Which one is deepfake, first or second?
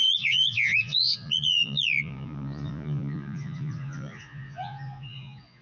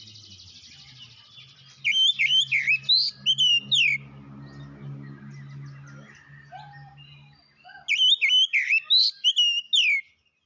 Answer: first